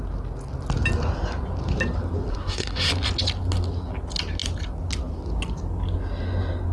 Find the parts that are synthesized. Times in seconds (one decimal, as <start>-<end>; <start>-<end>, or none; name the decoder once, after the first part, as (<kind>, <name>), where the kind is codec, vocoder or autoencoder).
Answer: 2.3-2.9 (codec, SNAC)